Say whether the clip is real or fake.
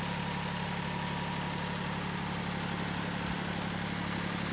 real